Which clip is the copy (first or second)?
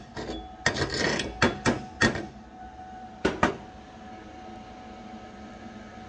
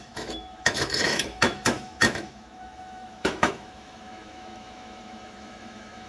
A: second